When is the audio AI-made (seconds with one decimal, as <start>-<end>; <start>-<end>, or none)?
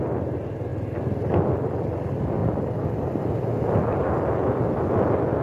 0.0-0.7; 1.4-2.4; 3.2-5.4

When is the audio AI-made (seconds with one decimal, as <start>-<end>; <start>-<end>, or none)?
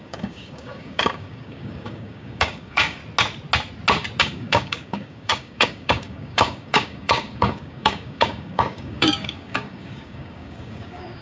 0.0-3.0; 4.2-11.2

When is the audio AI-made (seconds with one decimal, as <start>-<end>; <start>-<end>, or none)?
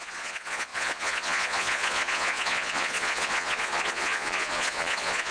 0.0-5.3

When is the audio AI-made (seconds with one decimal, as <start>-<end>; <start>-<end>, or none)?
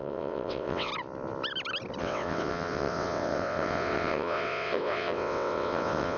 0.0-0.9; 2.0-6.2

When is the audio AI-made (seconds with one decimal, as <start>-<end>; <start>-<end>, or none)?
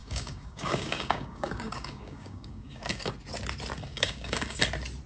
0.0-3.1; 3.9-4.6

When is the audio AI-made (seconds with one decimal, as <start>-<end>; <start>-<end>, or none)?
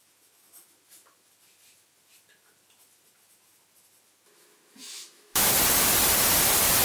4.8-5.5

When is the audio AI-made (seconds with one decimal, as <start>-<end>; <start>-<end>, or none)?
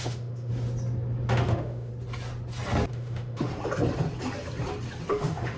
0.0-0.5; 1.3-1.9; 2.9-3.5; 5.1-5.6